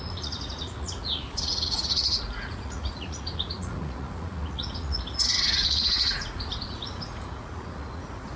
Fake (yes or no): yes